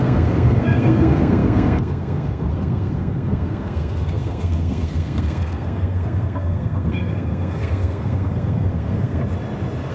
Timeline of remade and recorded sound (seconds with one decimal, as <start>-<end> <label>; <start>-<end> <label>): 0.0-9.2 remade; 9.2-9.9 recorded